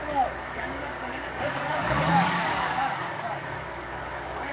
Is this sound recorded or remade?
remade